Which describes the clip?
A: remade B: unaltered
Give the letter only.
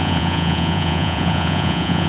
A